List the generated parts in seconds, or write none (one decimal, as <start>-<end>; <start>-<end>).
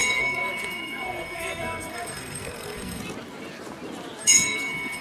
0.0-3.0; 4.2-5.0